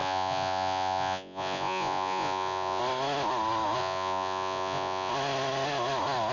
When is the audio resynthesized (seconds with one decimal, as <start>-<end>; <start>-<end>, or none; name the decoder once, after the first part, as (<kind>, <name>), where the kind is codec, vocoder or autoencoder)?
0.0-2.8 (vocoder, Vocos); 3.8-5.1